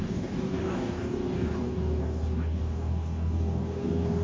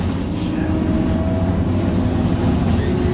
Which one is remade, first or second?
first